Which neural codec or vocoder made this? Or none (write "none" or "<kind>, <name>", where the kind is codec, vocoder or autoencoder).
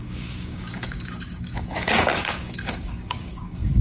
codec, DAC